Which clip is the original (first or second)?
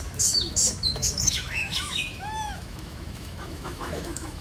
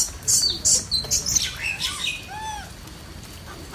second